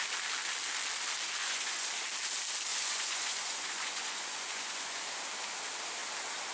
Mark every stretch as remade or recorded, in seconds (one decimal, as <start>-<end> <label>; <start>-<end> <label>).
0.0-1.4 recorded; 1.4-1.9 remade; 1.9-2.7 recorded; 2.7-5.0 remade; 5.0-6.5 recorded